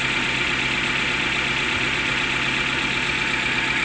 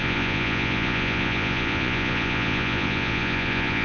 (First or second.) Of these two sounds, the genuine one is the first